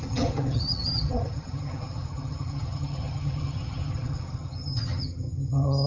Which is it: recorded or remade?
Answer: remade